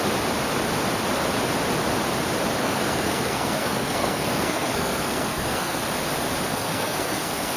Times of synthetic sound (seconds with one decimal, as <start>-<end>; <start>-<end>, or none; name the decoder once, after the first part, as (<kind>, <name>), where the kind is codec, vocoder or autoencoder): 2.6-5.8 (codec, SNAC); 6.5-7.6